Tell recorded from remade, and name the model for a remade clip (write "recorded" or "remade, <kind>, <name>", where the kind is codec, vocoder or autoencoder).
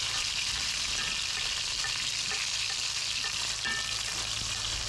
recorded